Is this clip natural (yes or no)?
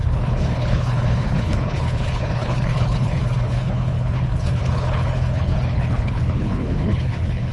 no